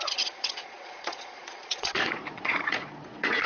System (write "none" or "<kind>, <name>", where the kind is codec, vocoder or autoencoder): vocoder, Vocos